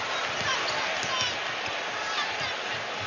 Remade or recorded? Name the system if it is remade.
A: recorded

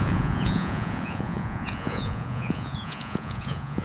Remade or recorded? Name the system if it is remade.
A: remade, vocoder, Vocos